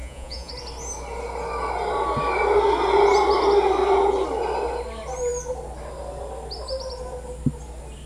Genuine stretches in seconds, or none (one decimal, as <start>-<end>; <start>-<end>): 0.5-8.1

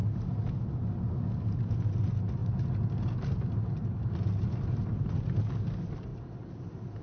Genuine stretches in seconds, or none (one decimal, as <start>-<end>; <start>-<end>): 0.0-7.0

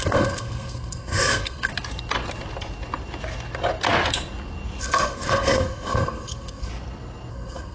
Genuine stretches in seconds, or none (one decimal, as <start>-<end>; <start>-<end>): 1.7-4.8; 6.7-7.3

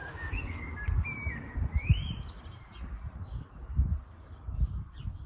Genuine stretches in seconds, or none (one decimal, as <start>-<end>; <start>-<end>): 0.6-5.3

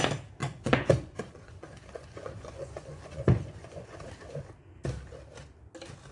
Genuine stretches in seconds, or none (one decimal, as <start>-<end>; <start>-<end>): 0.0-0.4; 4.1-6.1